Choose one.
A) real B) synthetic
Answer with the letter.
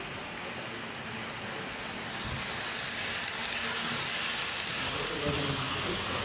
A